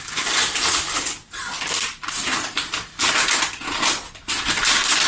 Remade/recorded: recorded